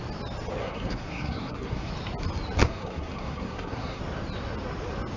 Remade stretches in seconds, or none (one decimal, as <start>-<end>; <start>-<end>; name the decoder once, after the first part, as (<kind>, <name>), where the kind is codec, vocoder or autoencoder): 0.6-1.9 (codec, SNAC); 2.6-4.0